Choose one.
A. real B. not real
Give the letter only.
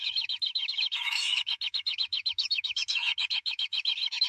B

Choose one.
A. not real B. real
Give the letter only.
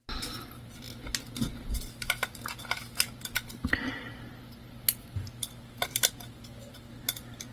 B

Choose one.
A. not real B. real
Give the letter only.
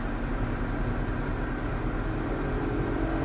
B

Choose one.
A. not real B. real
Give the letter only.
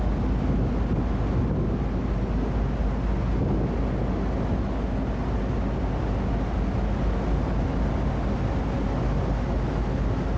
B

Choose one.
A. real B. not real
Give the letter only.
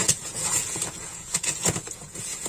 B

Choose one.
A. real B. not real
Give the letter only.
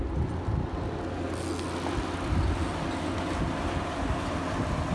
A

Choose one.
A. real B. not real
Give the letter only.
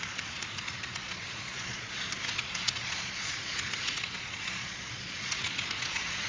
B